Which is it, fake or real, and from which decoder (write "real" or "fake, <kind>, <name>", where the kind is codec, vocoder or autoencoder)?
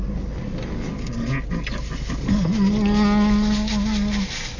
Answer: real